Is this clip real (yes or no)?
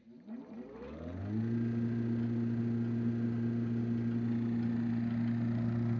yes